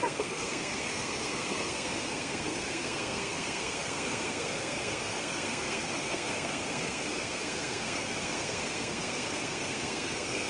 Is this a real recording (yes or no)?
no